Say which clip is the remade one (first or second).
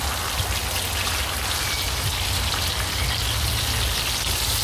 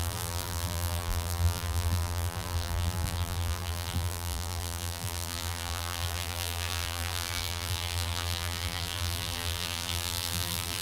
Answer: second